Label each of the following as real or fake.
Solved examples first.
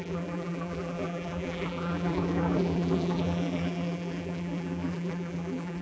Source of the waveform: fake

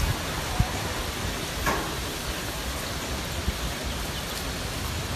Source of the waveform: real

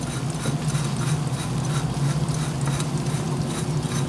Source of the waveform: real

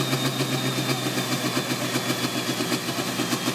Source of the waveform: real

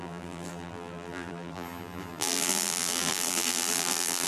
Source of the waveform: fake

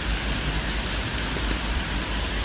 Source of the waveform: fake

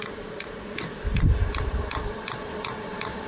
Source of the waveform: fake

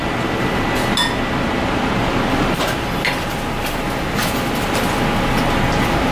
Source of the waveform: real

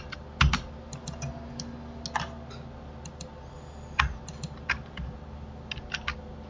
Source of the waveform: real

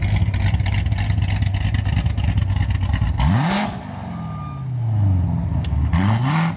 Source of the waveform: real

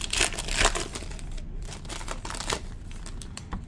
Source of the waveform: fake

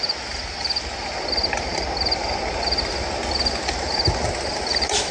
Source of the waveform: real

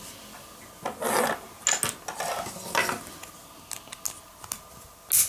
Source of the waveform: real